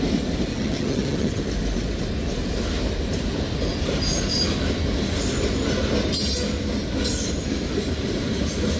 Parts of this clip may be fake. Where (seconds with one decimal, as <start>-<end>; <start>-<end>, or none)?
0.5-1.4